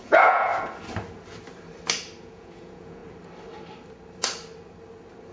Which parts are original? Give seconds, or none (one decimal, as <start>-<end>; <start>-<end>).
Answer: 0.5-2.2; 3.0-5.3